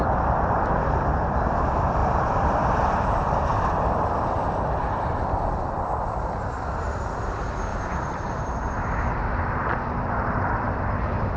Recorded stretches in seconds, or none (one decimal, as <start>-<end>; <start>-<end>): 0.0-2.0; 6.4-7.7; 10.8-11.4